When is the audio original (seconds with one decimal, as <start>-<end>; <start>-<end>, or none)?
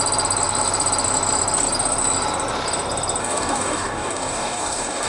0.0-3.2